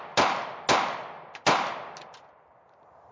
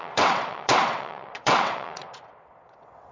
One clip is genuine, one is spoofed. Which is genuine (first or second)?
first